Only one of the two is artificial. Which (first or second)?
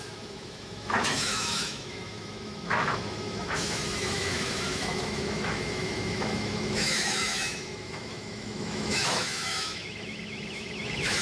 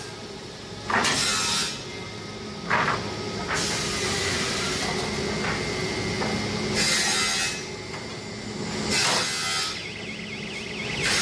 first